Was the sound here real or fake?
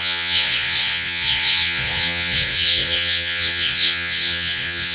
fake